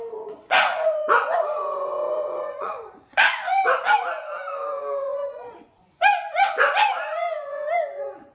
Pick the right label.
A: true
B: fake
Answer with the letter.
B